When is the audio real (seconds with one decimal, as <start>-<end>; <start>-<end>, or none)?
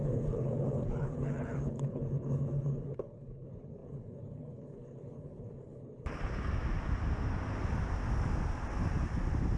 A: 6.5-9.6